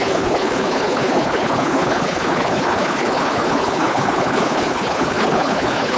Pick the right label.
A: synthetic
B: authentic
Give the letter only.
A